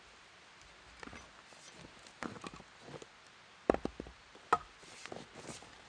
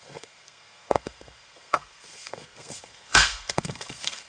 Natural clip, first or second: first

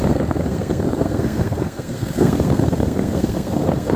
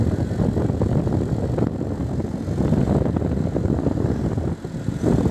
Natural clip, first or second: second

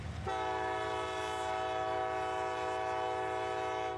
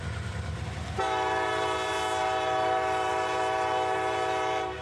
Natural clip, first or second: first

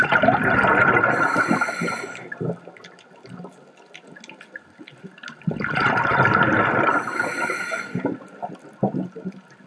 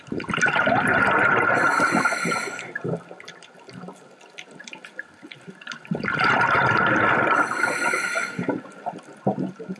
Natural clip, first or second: first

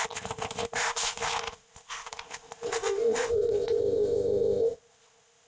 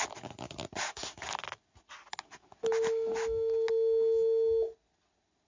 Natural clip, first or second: second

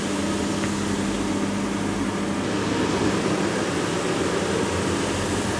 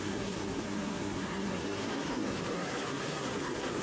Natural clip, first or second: first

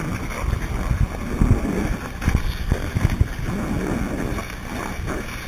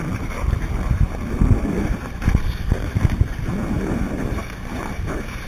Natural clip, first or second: first